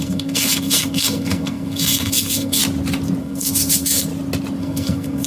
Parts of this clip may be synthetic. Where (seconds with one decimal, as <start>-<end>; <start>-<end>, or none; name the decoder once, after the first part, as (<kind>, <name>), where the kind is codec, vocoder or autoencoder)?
0.0-2.6 (codec, SNAC); 3.2-4.1; 4.6-5.3

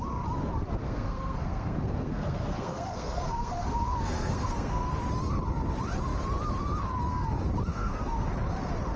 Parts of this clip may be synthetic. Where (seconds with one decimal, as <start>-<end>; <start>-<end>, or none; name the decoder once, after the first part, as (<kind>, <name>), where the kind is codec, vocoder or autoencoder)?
0.8-4.9 (codec, SNAC); 7.7-8.3

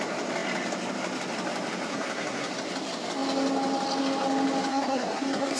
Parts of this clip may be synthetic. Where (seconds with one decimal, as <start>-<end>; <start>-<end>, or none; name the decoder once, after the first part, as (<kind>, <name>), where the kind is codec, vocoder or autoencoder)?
1.9-2.5 (codec, SNAC); 4.7-5.6

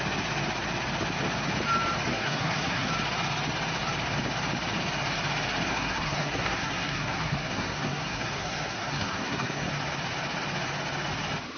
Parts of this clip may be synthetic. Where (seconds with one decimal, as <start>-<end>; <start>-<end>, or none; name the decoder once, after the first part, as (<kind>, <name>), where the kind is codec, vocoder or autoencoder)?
2.1-2.9 (codec, SNAC); 5.7-9.7